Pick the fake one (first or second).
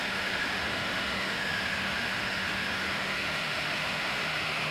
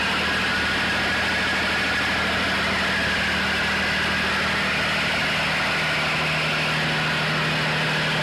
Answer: first